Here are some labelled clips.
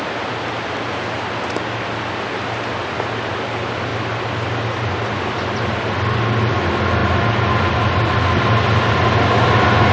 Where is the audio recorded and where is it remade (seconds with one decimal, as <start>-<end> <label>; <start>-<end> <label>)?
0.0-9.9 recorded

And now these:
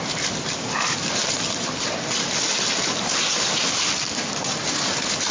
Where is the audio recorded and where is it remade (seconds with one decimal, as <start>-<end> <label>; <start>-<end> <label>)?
0.0-5.3 recorded

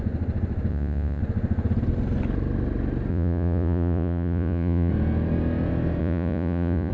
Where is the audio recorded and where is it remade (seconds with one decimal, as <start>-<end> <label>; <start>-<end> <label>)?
0.0-0.7 recorded; 0.7-1.2 remade; 1.2-3.1 recorded; 3.1-4.9 remade; 4.9-6.0 recorded; 6.0-6.9 remade